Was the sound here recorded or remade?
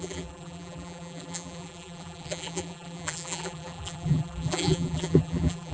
remade